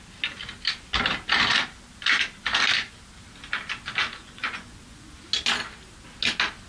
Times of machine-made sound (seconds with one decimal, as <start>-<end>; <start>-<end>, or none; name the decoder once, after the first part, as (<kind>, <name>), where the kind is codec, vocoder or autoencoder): 4.2-5.1 (vocoder, Vocos)